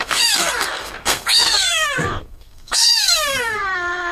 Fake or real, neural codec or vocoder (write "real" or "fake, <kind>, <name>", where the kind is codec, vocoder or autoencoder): fake, codec, SNAC